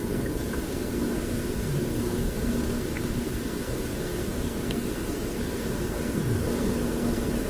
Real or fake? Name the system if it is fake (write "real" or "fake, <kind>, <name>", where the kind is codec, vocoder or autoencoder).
fake, codec, SNAC